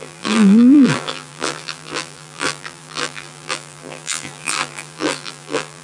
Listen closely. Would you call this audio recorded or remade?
remade